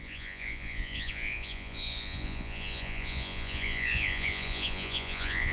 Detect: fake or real fake